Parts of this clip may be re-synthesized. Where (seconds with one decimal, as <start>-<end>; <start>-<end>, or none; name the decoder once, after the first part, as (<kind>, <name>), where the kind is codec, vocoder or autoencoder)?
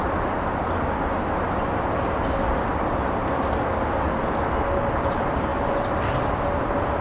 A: none